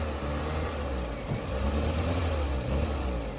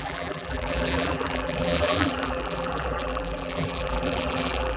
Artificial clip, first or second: second